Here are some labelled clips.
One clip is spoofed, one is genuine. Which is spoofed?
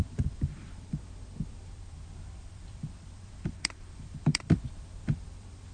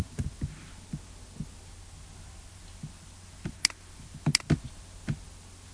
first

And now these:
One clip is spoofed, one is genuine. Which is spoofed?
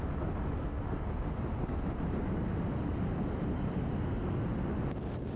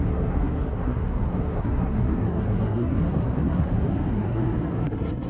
second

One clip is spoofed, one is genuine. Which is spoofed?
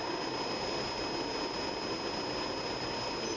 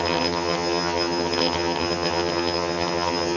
second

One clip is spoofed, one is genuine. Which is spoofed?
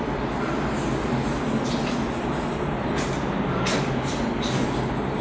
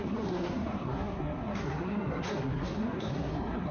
second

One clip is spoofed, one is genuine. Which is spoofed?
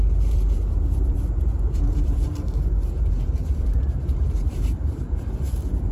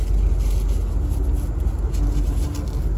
first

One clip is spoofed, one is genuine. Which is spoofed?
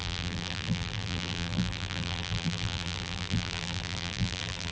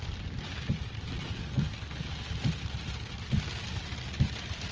first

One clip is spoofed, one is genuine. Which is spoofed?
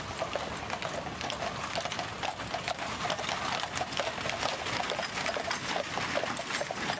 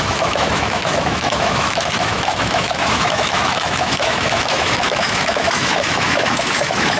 second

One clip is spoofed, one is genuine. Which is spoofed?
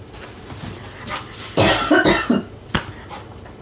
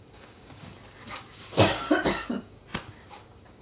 second